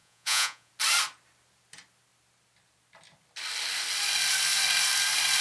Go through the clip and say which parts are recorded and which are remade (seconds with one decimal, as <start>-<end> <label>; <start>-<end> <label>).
0.0-0.7 remade; 0.7-5.4 recorded